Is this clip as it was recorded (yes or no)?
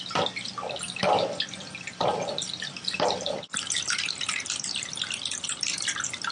yes